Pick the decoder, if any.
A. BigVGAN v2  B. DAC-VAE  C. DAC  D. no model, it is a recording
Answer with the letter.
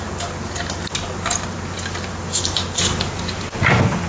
D